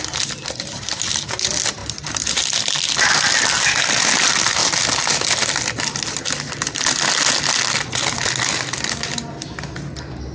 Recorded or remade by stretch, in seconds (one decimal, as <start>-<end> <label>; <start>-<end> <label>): 0.0-10.3 recorded